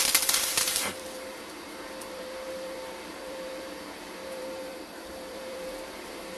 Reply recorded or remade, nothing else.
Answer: remade